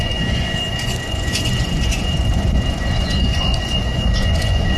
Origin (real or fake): fake